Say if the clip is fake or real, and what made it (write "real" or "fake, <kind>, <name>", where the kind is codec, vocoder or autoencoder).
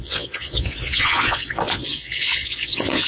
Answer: fake, vocoder, Vocos